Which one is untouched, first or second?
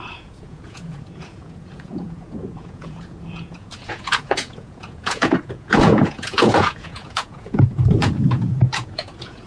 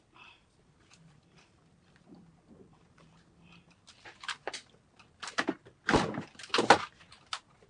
second